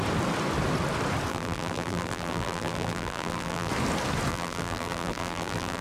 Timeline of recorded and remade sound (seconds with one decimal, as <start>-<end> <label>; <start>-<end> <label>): 0.0-1.3 recorded; 1.3-3.7 remade; 3.7-4.3 recorded; 4.3-5.8 remade